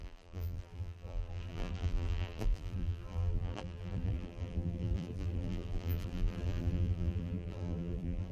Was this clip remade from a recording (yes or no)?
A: yes